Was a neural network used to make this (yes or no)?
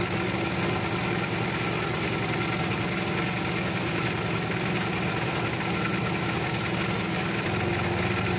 no